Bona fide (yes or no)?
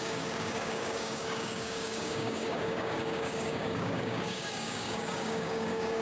no